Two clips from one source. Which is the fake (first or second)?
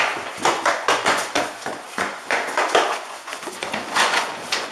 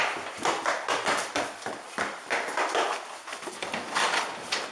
first